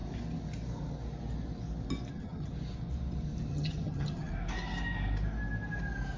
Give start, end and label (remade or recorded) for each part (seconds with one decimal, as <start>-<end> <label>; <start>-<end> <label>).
0.0-2.1 recorded; 2.1-2.5 remade; 2.5-3.5 recorded; 3.5-4.3 remade; 4.3-6.2 recorded